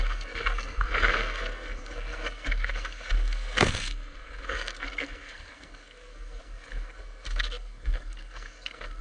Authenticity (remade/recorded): remade